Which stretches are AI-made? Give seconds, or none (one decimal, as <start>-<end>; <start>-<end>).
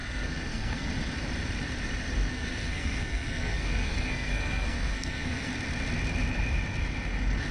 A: 0.0-0.9; 2.3-5.5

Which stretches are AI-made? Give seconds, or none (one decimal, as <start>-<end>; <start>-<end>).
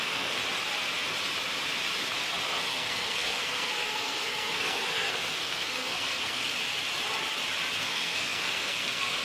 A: 0.0-0.4; 2.5-6.5; 7.8-9.2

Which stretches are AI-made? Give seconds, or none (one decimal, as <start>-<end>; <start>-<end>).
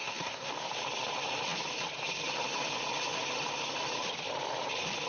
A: 0.0-0.5